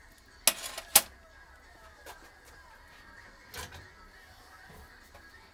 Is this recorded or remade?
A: recorded